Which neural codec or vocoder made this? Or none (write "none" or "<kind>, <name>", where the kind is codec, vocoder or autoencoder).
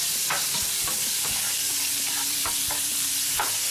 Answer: none